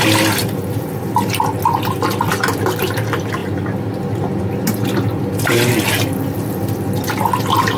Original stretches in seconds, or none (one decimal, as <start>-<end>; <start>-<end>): 0.0-7.8

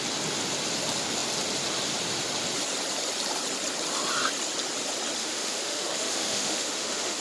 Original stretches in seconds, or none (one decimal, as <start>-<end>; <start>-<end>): 0.0-5.2

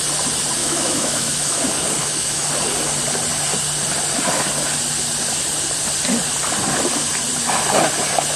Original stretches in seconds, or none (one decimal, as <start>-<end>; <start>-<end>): 0.0-0.6; 1.6-2.0; 2.5-8.4

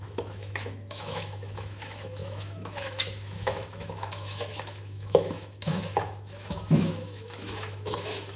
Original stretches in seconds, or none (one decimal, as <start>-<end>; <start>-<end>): none

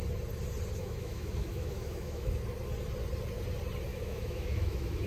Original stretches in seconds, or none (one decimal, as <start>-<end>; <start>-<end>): 0.0-0.8; 2.4-3.9

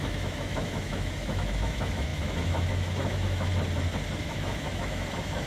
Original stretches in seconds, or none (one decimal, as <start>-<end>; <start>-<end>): 3.5-4.2